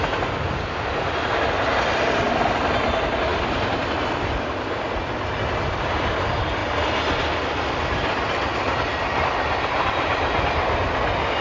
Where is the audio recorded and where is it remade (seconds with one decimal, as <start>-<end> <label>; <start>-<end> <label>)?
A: 0.0-11.4 recorded